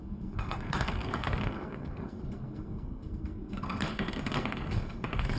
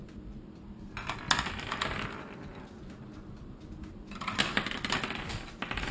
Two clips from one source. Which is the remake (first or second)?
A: first